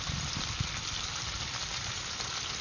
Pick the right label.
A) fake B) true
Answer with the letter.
B